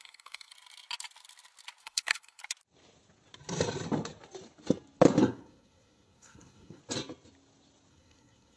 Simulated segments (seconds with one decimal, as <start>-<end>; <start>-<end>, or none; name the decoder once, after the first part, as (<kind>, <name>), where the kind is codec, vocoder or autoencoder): 0.0-0.5 (codec, SNAC); 1.8-2.4; 5.2-6.8; 7.9-8.6